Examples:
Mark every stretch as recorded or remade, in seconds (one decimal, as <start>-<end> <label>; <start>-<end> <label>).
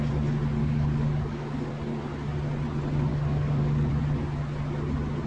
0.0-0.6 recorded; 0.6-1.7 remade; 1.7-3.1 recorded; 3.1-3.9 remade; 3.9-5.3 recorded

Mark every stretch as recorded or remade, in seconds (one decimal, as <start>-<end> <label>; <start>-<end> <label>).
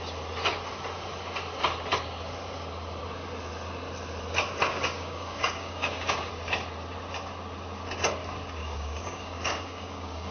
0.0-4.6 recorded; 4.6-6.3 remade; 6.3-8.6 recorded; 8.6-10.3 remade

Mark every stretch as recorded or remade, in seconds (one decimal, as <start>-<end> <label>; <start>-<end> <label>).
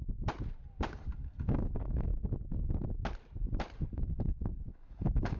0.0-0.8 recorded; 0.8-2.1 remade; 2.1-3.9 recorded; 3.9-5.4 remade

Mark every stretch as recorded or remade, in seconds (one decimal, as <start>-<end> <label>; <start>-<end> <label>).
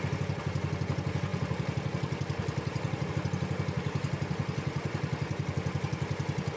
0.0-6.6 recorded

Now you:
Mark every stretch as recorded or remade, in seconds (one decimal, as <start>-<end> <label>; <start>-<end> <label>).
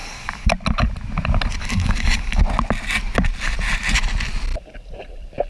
0.0-0.5 remade; 0.5-1.6 recorded; 1.6-2.4 remade; 2.4-5.5 recorded